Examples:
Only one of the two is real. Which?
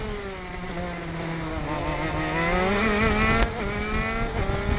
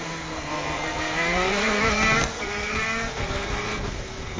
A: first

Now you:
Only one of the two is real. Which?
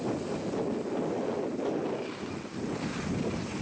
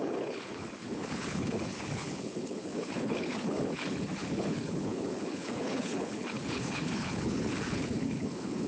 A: first